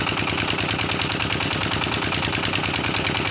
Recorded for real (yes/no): yes